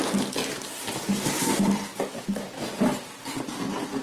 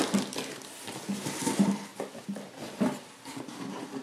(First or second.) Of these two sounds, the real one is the first